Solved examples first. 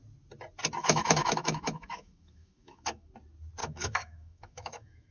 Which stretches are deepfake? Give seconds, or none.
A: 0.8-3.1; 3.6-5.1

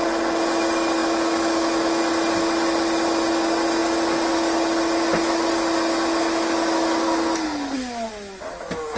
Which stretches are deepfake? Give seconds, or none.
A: 1.0-2.0

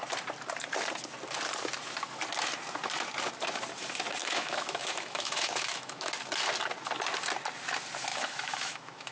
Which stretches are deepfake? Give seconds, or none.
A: 4.2-6.1; 8.1-9.1

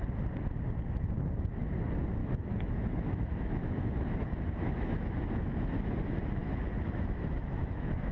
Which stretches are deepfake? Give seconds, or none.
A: 2.2-5.5; 6.4-8.1